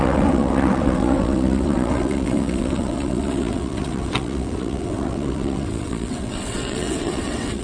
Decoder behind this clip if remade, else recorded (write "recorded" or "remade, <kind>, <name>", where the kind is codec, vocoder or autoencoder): remade, vocoder, WaveNeXt